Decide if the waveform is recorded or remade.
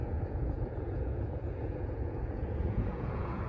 remade